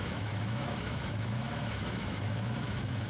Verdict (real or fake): fake